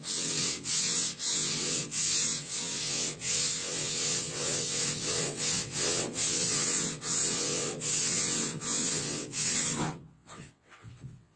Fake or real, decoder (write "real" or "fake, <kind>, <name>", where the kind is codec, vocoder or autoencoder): fake, vocoder, WaveNeXt